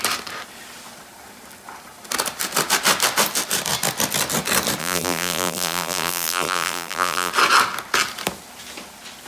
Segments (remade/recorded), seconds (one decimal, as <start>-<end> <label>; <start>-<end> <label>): 0.0-4.8 recorded; 4.8-7.3 remade; 7.3-9.3 recorded